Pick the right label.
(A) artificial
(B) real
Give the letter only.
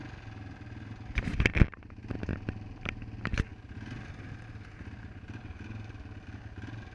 B